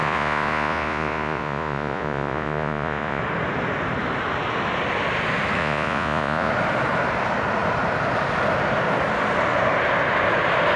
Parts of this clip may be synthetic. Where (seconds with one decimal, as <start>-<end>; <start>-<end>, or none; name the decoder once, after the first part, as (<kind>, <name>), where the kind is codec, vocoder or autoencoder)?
0.0-3.2 (vocoder, Vocos); 5.6-6.5